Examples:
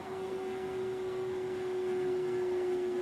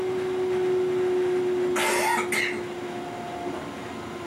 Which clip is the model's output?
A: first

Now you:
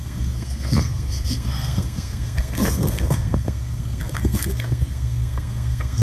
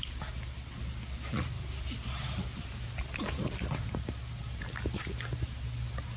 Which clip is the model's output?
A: first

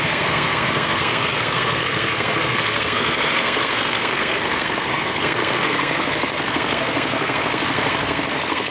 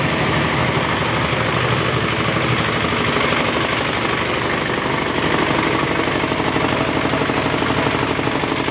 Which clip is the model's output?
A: first